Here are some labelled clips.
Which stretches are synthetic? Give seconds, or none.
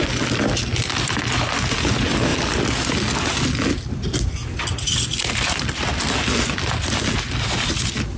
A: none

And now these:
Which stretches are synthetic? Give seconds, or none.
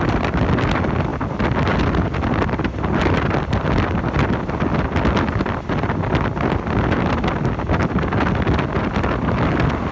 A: none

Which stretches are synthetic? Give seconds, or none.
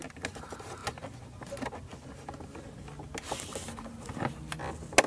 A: none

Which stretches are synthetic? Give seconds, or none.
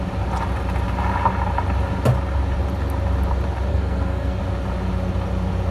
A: 3.7-4.4 (codec, SNAC)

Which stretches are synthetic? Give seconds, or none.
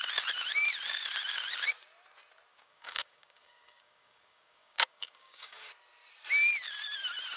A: 2.5-5.7 (codec, DAC)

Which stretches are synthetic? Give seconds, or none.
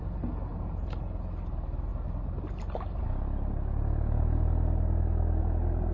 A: none